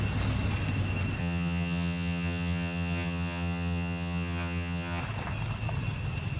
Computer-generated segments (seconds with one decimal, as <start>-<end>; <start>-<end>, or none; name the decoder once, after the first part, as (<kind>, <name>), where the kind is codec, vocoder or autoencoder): 1.2-5.0 (vocoder, HiFi-GAN)